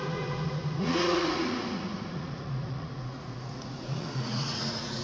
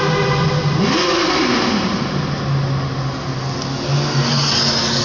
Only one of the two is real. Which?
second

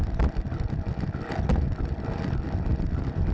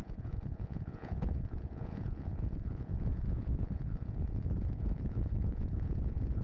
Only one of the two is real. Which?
first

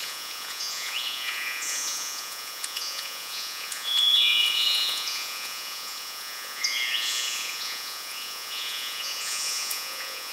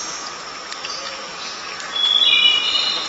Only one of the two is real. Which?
second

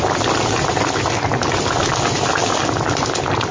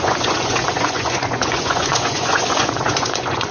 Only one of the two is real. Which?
first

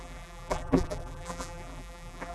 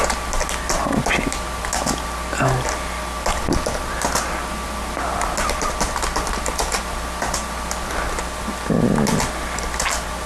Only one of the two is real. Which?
second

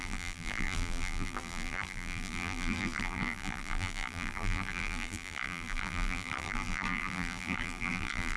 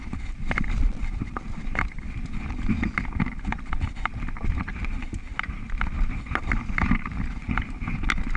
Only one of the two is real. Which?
second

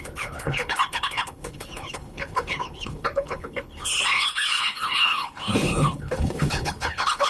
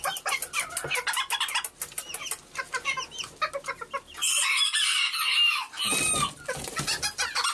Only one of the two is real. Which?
second